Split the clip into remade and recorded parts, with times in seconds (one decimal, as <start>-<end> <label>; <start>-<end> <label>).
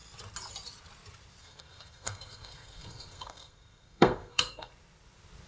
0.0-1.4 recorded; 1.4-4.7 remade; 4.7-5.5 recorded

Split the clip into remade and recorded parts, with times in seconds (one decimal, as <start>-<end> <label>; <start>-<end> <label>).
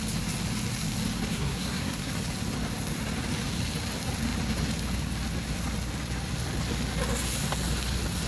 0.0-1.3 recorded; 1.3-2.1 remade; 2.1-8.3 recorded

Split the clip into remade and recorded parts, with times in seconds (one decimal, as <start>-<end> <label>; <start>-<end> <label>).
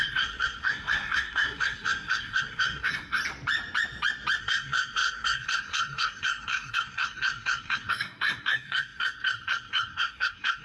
0.0-3.2 remade; 3.2-4.4 recorded; 4.4-10.6 remade